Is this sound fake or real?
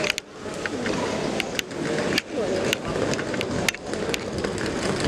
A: real